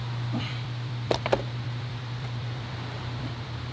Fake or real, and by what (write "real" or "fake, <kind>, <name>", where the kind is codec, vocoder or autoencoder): fake, vocoder, BigVGAN v2